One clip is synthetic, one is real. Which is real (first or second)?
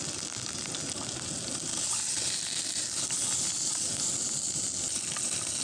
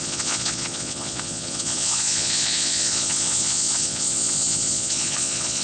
first